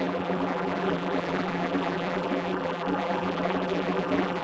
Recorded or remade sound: remade